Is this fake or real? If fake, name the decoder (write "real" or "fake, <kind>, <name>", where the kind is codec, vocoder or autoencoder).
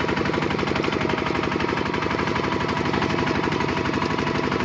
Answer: fake, vocoder, BigVGAN v2